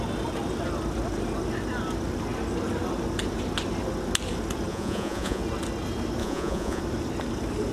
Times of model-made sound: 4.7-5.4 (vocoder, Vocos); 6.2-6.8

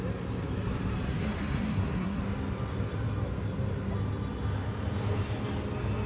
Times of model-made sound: 1.1-2.2 (codec, SNAC)

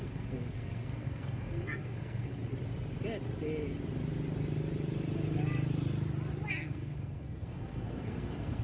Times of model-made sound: 0.0-2.4 (codec, SNAC); 6.5-8.6

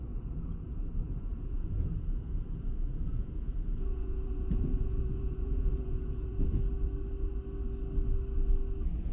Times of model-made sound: 0.0-6.3 (vocoder, Vocos)

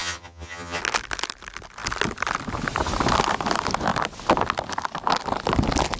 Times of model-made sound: 0.0-0.8 (vocoder, HiFi-GAN)

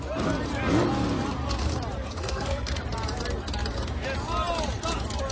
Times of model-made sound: 2.1-2.8 (codec, SNAC)

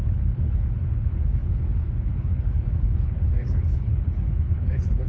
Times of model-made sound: 0.0-5.1 (codec, HILCodec)